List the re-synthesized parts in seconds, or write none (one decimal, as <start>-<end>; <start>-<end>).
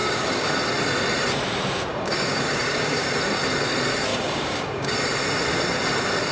0.0-0.5; 1.9-3.1; 4.1-4.9